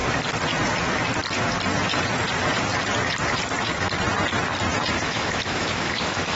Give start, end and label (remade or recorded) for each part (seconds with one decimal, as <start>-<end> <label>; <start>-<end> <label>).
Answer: 0.0-4.7 recorded; 4.7-6.4 remade